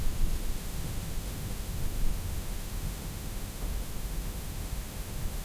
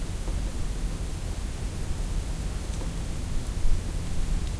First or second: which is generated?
first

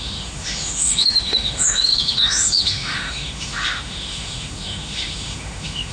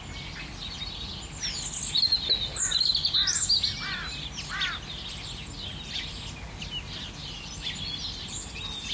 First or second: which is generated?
first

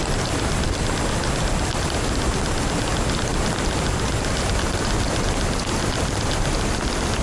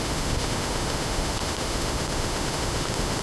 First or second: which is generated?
second